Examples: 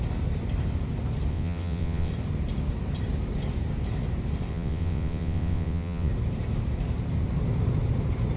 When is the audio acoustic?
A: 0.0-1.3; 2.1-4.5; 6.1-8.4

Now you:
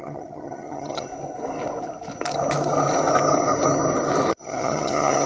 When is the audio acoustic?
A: 1.1-4.3

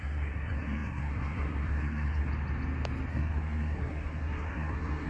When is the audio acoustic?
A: 2.3-3.1

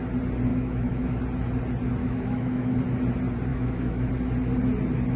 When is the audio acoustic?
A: 0.0-0.5; 1.2-2.0; 2.8-3.5; 4.1-5.2

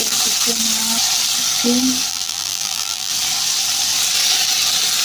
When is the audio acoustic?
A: 0.0-2.1; 3.1-5.0

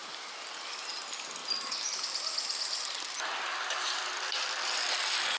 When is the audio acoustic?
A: 0.9-1.4; 4.6-5.4